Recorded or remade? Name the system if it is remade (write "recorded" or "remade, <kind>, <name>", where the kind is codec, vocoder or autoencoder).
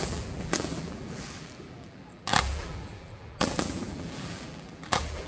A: remade, vocoder, BigVGAN v2